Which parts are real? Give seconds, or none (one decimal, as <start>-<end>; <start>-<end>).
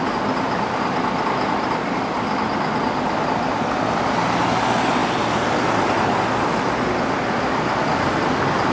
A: 0.0-8.7